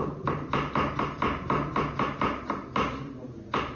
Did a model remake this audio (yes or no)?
no